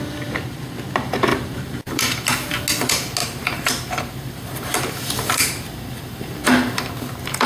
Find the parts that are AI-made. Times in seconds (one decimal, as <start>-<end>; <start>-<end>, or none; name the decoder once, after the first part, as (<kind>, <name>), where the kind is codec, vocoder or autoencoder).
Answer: 1.3-2.6 (vocoder, BigVGAN v2); 3.2-6.9